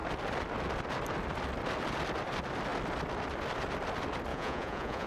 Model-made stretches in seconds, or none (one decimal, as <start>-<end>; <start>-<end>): 4.3-5.1